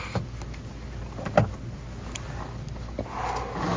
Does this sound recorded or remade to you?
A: recorded